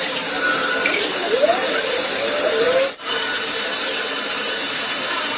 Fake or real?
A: fake